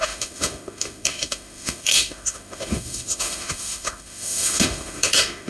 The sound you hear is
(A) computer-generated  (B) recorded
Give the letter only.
A